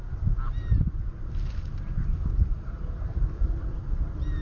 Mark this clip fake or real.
real